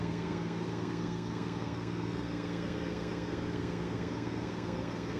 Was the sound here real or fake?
fake